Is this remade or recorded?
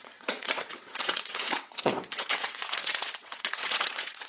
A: remade